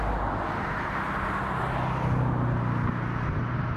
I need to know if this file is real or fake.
real